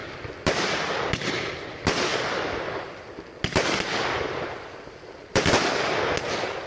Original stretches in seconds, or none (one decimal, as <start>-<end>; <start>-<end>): 0.0-6.7